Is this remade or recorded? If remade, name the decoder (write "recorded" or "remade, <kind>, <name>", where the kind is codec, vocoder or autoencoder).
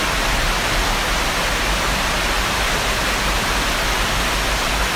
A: recorded